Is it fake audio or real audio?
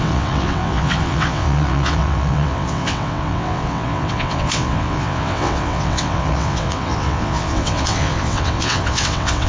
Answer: fake